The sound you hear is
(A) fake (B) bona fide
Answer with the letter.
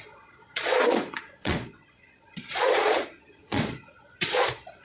A